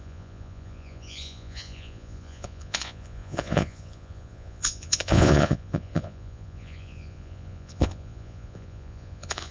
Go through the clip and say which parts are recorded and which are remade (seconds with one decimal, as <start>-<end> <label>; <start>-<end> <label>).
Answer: 0.0-9.5 remade